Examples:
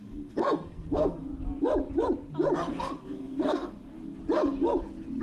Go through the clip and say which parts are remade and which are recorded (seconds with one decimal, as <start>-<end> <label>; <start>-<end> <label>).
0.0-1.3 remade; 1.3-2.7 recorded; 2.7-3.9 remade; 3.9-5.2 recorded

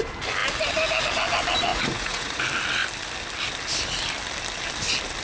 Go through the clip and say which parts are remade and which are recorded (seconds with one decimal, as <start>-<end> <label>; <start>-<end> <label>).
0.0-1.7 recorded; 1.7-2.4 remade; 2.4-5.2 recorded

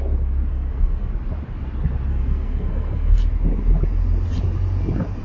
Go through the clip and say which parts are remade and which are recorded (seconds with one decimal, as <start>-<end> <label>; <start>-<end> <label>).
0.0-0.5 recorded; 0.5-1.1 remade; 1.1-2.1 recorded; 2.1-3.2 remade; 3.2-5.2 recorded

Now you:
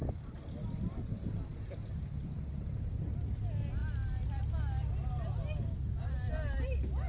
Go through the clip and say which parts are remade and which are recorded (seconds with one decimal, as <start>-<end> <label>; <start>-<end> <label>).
0.0-7.1 recorded